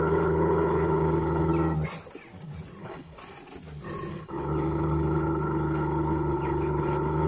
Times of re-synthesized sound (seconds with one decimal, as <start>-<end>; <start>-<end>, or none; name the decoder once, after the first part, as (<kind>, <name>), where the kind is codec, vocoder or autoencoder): 0.0-1.5 (codec, HILCodec); 2.8-3.2; 4.1-7.3